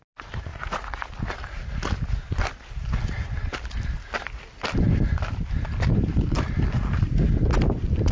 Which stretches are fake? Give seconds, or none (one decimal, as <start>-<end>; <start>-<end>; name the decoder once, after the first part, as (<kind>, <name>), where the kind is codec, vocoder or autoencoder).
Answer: 0.5-1.1 (vocoder, Vocos)